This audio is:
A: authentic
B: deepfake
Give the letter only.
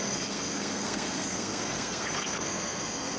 B